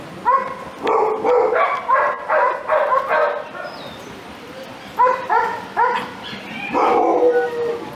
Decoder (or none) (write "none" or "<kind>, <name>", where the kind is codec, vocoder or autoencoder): none